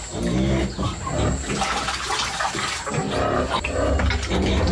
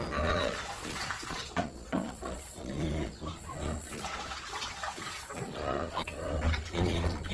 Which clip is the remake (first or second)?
second